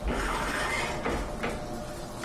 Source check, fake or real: real